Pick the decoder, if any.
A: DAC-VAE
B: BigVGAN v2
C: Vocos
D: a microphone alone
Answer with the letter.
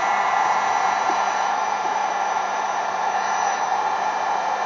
B